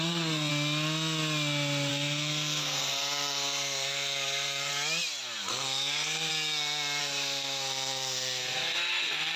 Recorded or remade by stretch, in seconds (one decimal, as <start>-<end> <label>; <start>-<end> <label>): 0.0-0.5 remade; 0.5-1.9 recorded; 1.9-4.7 remade; 4.7-5.5 recorded; 5.5-6.3 remade; 6.3-7.0 recorded; 7.0-9.4 remade